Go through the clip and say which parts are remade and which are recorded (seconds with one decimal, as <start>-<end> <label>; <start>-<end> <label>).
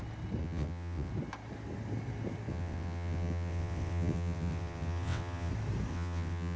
0.0-0.4 recorded; 0.4-1.1 remade; 1.1-2.5 recorded; 2.5-5.5 remade; 5.5-5.9 recorded; 5.9-6.6 remade